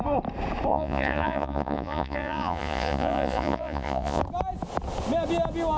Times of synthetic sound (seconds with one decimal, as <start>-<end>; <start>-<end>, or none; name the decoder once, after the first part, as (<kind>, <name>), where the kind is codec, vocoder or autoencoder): 0.7-4.2 (vocoder, Vocos)

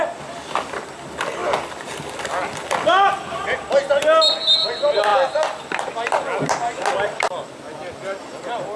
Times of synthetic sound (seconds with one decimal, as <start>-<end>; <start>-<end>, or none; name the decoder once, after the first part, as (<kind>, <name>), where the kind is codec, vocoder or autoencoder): none

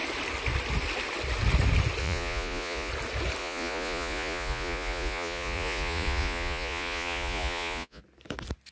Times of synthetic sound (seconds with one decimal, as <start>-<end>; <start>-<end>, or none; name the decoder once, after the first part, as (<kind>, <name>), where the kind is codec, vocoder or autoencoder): 2.0-2.9 (vocoder, Vocos); 3.4-8.0